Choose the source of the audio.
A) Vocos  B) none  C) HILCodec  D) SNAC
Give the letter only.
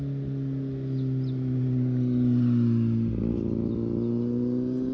B